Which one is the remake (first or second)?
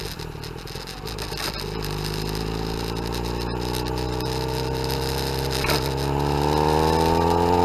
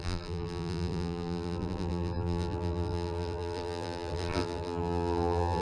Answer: second